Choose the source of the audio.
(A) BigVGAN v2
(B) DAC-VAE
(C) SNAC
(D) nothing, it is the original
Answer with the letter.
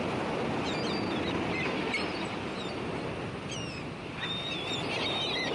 D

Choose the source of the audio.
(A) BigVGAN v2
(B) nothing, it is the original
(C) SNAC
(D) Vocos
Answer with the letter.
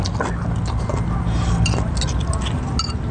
B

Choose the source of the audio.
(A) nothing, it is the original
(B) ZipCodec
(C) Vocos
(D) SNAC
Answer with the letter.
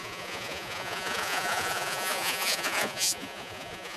C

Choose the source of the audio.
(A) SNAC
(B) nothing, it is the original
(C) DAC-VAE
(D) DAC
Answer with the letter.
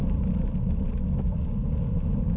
B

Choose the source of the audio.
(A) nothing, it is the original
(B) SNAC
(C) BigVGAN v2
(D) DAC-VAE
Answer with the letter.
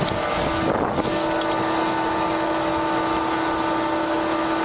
A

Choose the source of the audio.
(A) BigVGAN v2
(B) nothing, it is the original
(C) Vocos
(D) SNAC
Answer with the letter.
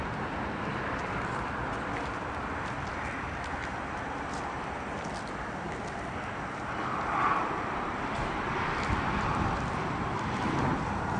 A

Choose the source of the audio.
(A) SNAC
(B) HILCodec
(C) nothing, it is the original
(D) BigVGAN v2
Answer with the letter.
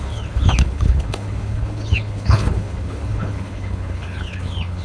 B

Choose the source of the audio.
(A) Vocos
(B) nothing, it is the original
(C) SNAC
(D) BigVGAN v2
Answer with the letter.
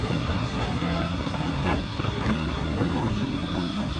C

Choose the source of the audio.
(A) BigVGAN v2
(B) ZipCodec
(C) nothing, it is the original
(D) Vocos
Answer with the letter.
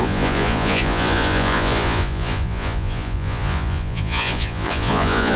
D